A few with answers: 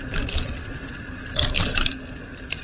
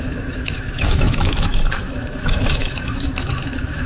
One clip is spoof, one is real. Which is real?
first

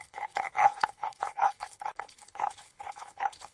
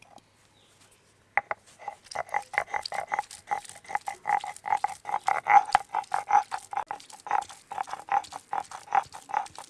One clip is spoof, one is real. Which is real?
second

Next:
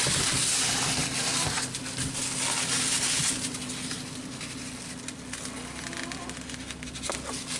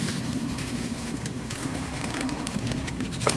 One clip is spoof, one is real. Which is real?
first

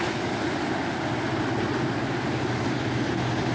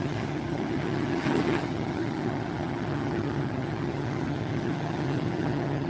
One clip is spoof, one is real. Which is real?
first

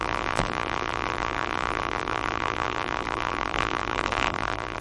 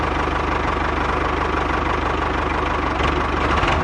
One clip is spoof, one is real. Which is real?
second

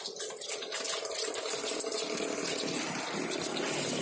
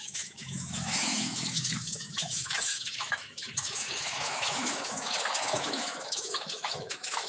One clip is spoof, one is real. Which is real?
first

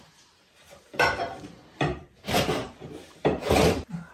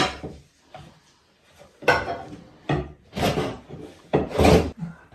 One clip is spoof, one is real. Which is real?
second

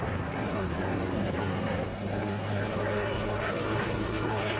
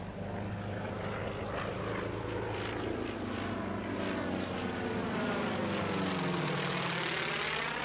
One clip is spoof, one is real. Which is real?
second